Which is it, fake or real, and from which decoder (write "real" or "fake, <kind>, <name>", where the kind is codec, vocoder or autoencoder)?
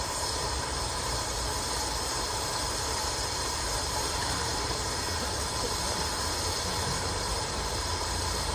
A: fake, vocoder, BigVGAN v2